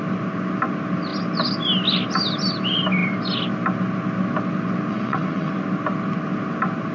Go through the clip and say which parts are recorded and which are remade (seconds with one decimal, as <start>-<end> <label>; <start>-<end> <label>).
0.0-4.9 recorded; 4.9-5.5 remade; 5.5-6.9 recorded